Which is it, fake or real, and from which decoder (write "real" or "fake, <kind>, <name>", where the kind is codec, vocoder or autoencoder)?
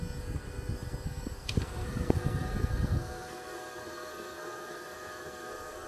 fake, codec, SNAC